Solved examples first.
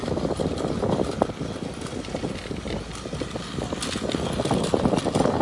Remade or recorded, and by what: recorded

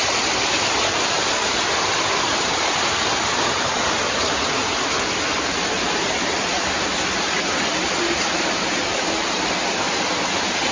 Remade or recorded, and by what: remade, vocoder, BigVGAN v2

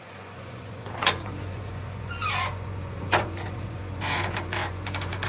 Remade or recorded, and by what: remade, vocoder, Vocos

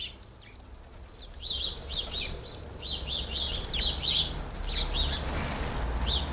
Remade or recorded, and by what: recorded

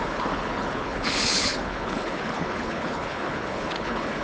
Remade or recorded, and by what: remade, codec, HILCodec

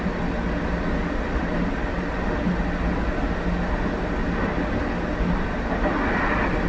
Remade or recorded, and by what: recorded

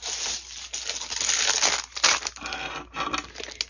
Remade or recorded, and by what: recorded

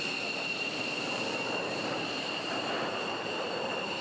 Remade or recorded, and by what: remade, vocoder, BigVGAN v2